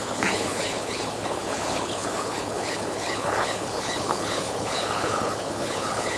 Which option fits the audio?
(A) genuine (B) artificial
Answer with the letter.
B